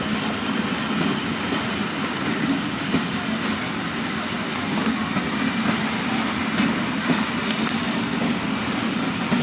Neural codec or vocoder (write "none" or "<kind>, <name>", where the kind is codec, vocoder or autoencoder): none